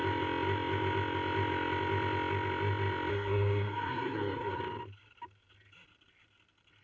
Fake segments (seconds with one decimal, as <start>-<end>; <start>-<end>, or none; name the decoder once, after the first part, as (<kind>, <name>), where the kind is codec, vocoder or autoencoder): 3.1-4.6 (codec, SNAC)